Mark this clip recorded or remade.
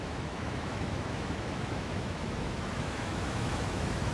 remade